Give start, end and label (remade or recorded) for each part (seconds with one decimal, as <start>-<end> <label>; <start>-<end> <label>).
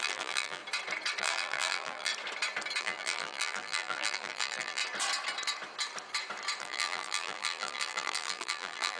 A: 0.0-0.6 remade; 0.6-1.2 recorded; 1.2-2.1 remade; 2.1-2.8 recorded; 2.8-4.8 remade; 4.8-6.6 recorded; 6.6-9.0 remade